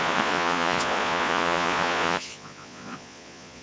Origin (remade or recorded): remade